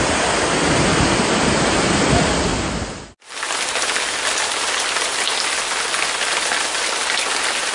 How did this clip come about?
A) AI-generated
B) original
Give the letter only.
B